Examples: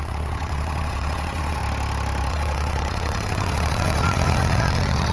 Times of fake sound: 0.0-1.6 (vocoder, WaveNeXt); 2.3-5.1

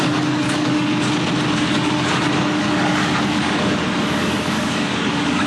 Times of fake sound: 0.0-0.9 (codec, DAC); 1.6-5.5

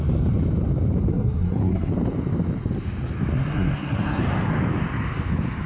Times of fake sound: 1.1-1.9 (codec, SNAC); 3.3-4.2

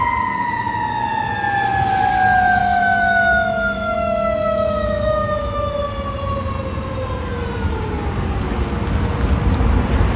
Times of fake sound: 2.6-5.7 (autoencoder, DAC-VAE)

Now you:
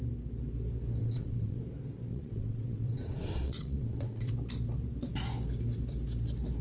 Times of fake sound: 1.0-1.6 (vocoder, WaveNeXt); 2.1-4.3